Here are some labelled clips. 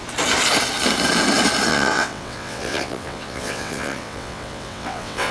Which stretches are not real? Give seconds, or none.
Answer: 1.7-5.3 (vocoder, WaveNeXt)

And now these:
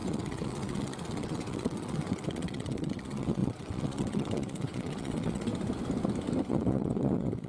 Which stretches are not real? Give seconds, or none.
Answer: 0.0-5.5 (vocoder, WaveNeXt); 6.5-7.5

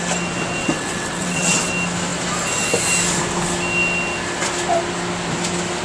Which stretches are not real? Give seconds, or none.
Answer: 0.6-1.7 (vocoder, WaveNeXt)